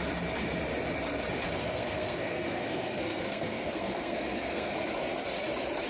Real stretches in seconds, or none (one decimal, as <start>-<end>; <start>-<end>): 0.0-1.6; 4.7-5.9